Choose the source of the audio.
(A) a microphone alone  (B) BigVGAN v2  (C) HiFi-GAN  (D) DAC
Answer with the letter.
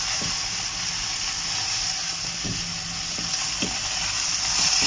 A